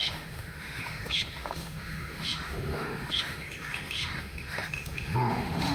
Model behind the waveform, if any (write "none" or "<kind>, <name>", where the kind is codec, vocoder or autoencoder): autoencoder, DAC-VAE